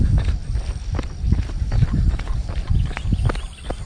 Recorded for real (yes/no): yes